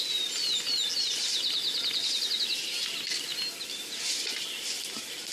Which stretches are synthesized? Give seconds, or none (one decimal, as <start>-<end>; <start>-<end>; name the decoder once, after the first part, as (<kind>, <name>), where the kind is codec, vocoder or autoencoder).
1.7-2.4 (vocoder, BigVGAN v2)